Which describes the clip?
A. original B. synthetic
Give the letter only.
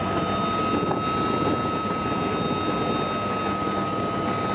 A